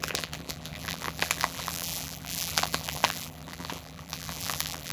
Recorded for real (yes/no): no